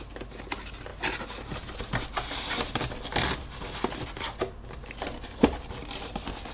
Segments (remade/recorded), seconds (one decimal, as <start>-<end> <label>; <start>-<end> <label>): 0.0-6.5 recorded